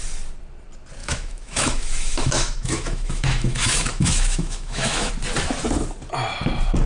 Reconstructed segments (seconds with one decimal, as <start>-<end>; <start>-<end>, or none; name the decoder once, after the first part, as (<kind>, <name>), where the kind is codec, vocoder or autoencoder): 1.0-5.1 (autoencoder, DAC-VAE)